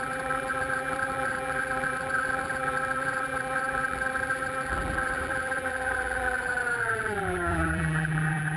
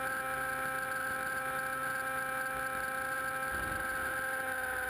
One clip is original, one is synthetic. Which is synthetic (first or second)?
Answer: first